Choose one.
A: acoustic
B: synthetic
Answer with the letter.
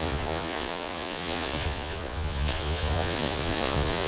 B